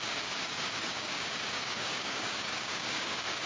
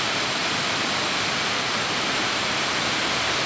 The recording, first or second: second